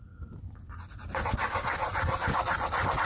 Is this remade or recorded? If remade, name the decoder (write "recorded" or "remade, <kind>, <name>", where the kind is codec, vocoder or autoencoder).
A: recorded